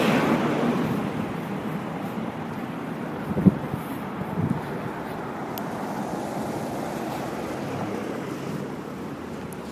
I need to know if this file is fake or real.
real